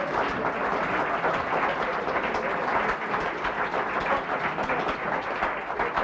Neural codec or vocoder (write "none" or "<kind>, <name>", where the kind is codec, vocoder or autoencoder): none